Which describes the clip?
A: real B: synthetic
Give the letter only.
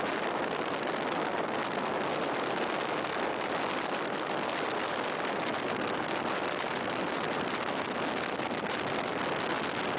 A